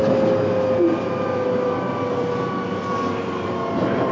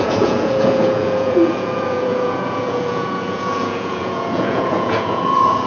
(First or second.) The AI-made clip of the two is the second